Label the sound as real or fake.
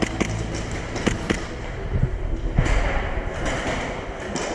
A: real